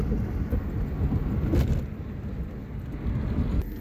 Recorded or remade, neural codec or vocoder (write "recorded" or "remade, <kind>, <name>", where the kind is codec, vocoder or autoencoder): recorded